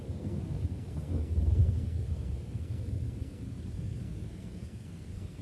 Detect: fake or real fake